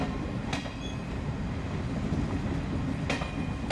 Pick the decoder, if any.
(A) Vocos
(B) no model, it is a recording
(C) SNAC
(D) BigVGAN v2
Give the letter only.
B